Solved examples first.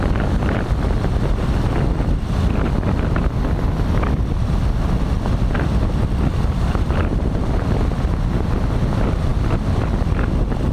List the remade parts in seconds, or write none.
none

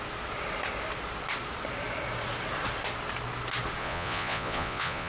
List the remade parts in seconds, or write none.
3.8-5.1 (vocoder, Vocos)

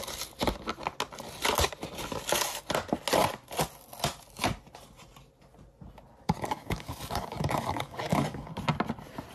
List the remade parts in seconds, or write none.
6.2-8.5 (codec, DAC)

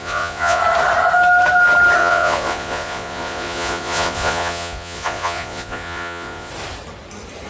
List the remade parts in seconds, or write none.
0.0-0.6 (vocoder, Vocos); 2.0-6.5

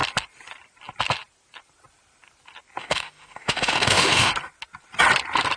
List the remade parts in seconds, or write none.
2.8-4.3 (autoencoder, DAC-VAE)